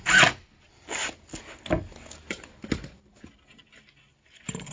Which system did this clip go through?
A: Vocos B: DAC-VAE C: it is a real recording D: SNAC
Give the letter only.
C